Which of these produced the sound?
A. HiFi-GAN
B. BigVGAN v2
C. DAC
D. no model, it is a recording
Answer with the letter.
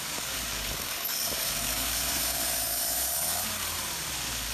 C